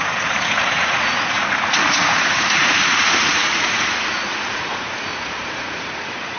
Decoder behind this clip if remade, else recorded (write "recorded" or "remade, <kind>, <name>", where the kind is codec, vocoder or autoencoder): remade, vocoder, Vocos